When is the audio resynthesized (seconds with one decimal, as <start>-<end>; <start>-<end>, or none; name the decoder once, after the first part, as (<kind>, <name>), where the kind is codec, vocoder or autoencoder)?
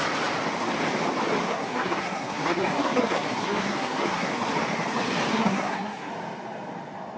1.4-4.3 (codec, SNAC); 5.3-6.1